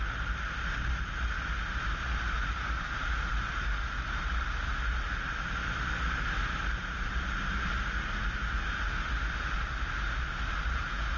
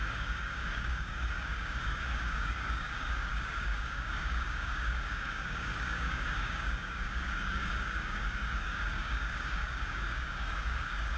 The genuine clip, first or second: first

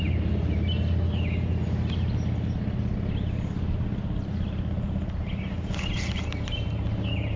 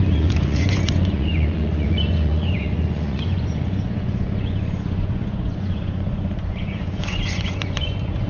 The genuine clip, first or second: first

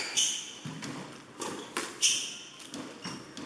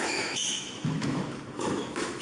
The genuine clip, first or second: first